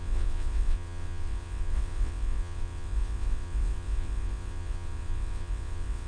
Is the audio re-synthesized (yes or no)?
yes